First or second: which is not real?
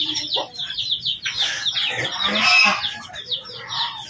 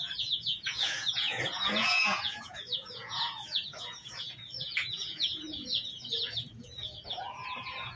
second